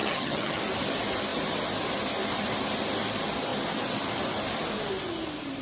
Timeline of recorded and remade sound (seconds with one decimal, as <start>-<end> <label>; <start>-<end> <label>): 0.0-0.6 remade; 0.6-5.6 recorded